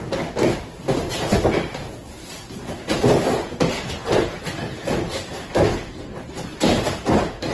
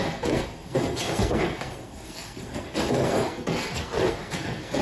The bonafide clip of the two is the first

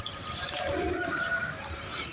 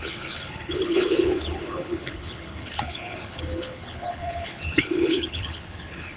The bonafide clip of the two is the first